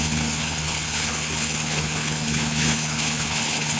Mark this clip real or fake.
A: fake